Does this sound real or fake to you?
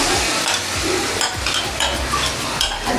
real